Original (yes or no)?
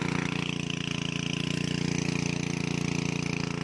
yes